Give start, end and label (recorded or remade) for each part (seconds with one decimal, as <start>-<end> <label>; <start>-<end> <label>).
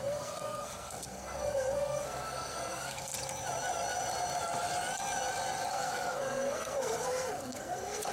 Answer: 0.0-3.1 remade; 3.1-5.7 recorded; 5.7-8.1 remade